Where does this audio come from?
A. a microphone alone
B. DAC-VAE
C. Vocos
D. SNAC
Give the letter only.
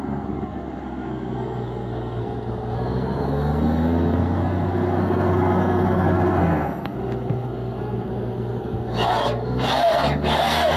D